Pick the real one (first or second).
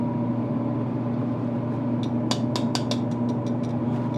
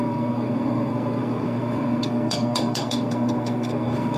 first